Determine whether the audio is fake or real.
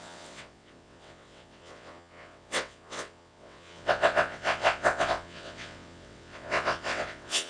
fake